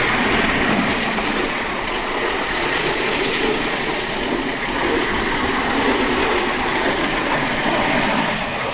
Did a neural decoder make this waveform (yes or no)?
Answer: yes